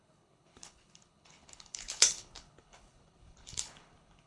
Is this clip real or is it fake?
fake